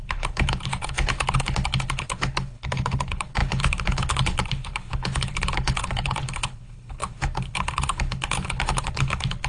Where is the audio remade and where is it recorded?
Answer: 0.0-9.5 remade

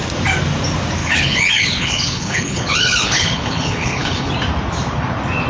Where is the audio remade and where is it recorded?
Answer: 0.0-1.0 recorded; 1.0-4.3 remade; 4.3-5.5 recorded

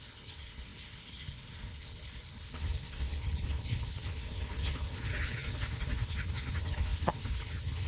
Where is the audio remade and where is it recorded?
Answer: 0.0-7.9 remade

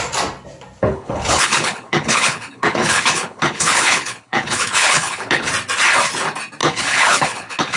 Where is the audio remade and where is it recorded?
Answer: 0.0-0.8 recorded; 0.8-5.5 remade; 5.5-6.6 recorded; 6.6-7.8 remade

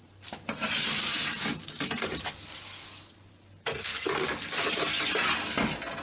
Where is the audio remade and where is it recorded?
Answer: 0.0-6.0 recorded